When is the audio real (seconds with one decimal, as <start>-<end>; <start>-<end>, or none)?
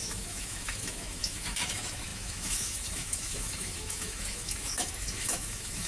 none